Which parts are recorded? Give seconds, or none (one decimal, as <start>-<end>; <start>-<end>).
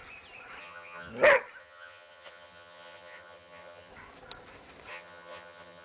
0.0-0.6; 1.1-1.6; 3.9-4.9